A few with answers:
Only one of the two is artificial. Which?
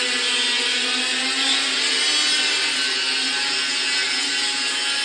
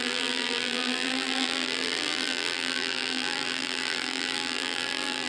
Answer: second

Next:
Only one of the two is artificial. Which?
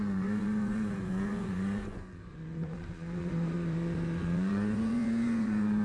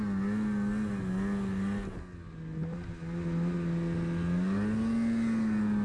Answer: first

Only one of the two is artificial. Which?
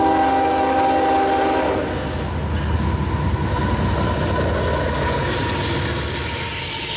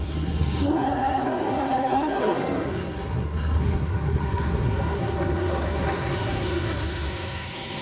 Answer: second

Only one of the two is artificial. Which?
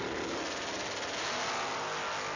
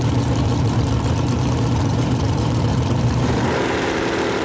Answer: second